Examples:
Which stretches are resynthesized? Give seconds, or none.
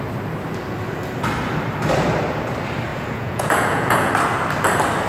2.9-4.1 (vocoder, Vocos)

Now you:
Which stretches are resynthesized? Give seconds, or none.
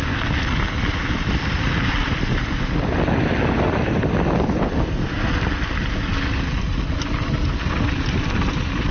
none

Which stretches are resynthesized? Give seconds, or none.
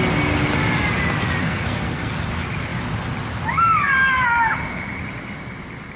1.4-2.1 (codec, SNAC)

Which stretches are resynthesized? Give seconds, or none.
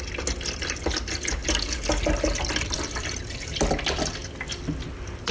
none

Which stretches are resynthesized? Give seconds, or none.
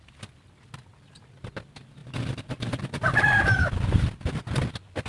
none